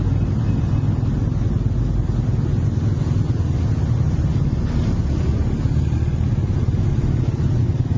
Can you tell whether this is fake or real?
real